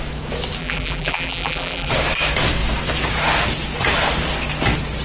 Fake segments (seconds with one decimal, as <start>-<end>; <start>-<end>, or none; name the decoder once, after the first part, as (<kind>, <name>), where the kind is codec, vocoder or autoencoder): 0.6-1.9 (vocoder, BigVGAN v2)